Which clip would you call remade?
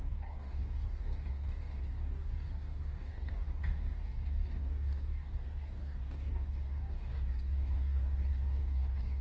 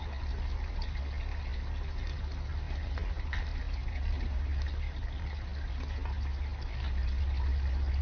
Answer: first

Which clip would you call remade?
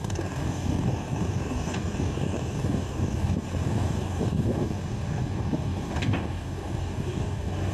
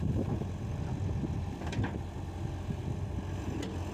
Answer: first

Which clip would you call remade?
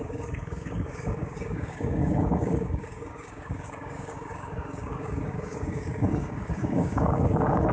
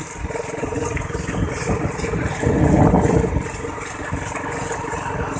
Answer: first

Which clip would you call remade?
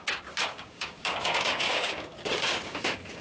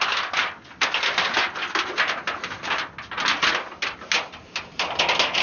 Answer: first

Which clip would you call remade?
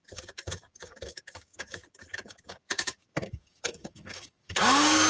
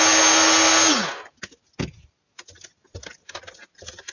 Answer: first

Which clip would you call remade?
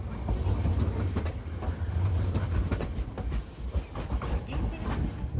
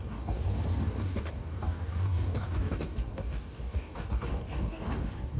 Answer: second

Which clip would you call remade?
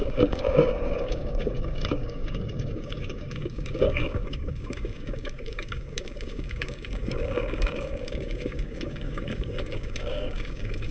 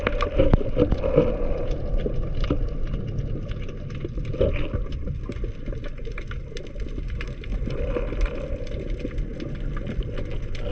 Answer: first